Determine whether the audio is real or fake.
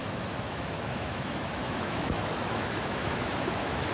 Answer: fake